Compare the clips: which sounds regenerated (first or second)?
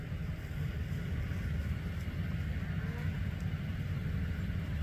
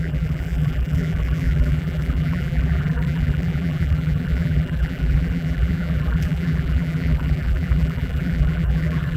second